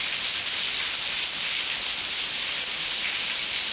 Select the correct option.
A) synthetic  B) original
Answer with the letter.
B